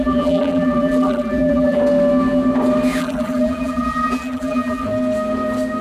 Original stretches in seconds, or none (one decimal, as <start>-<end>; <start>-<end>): 1.8-3.0; 4.9-5.8